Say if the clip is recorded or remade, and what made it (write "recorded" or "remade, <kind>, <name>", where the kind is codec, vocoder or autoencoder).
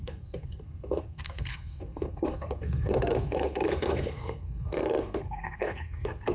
remade, codec, SNAC